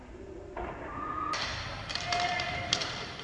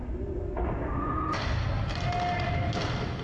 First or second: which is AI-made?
first